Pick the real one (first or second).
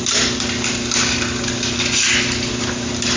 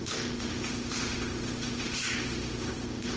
first